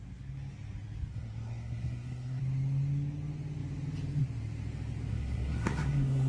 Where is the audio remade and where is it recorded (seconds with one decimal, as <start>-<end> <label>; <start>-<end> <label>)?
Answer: 0.0-1.1 recorded; 1.1-2.4 remade; 2.4-5.1 recorded; 5.1-6.3 remade